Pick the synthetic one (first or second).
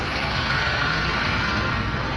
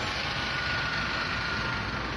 first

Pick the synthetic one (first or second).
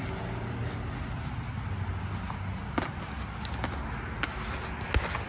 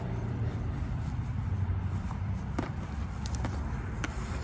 second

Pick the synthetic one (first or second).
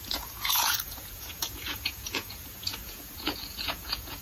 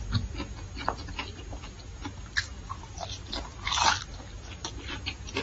first